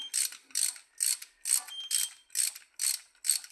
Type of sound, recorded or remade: recorded